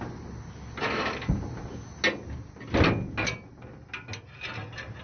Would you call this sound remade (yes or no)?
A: no